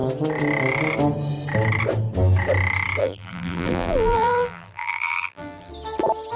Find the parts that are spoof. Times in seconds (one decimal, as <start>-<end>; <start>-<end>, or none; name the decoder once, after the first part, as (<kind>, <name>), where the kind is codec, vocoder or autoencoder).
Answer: 3.0-5.7 (vocoder, BigVGAN v2)